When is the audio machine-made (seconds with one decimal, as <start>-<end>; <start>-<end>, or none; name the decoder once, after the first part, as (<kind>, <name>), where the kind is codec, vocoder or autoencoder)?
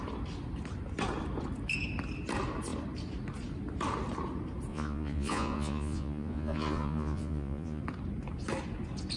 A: 4.7-7.8 (vocoder, Vocos)